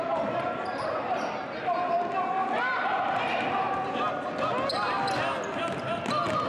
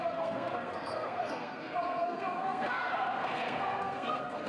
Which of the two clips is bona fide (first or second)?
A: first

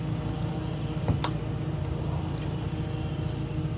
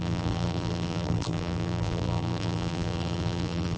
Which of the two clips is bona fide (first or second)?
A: first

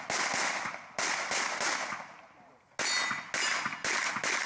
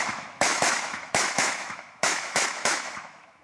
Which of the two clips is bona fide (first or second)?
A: first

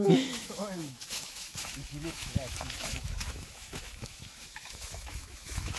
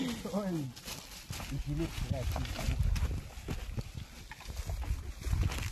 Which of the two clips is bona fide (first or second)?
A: second